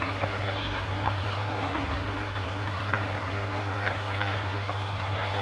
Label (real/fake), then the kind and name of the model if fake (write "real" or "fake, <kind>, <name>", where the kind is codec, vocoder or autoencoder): fake, codec, SNAC